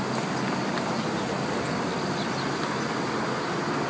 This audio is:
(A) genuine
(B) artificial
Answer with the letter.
A